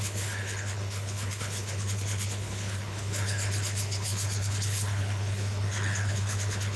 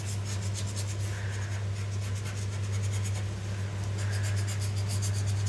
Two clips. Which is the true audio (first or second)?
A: second